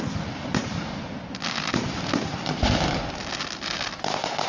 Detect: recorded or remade recorded